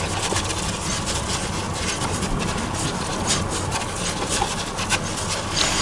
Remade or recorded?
recorded